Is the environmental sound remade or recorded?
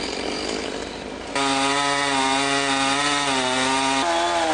recorded